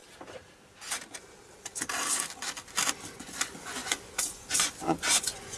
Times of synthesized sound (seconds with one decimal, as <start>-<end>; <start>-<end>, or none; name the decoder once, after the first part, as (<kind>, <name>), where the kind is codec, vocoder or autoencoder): 3.1-5.6 (vocoder, Vocos)

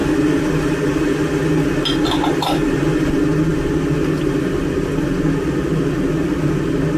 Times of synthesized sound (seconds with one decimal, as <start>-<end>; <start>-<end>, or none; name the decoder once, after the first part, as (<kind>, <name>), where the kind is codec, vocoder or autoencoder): none

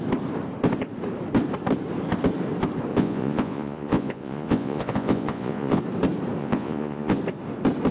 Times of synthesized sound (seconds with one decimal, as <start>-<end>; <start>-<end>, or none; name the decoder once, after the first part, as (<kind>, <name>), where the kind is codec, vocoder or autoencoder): 2.9-5.8 (vocoder, Vocos); 6.4-7.2

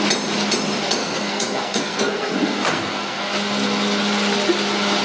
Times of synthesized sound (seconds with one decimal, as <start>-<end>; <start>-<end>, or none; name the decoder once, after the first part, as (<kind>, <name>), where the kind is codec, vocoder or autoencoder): 1.0-3.3 (codec, SNAC)

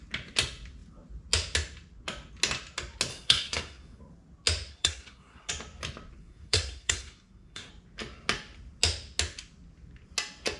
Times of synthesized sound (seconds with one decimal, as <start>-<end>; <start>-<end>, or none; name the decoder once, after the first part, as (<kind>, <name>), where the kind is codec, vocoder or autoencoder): 3.1-4.0 (codec, SNAC); 4.7-5.5; 6.2-7.7

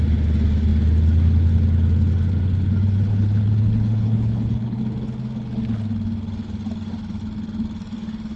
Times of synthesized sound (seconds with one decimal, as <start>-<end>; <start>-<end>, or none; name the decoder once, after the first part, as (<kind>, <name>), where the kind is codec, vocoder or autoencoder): 3.1-4.8 (codec, HILCodec)

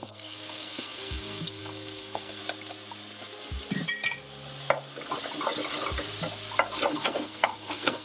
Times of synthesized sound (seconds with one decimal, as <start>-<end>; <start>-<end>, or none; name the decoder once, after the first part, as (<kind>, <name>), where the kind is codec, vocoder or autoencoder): 0.0-2.4 (codec, SNAC); 6.9-8.0